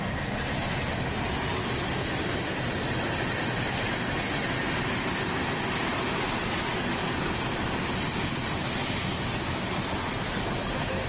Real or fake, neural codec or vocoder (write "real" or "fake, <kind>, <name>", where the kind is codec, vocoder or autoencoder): real